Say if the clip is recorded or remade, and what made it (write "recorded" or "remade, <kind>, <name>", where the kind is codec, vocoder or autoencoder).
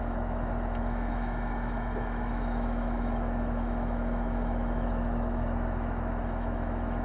remade, autoencoder, DAC-VAE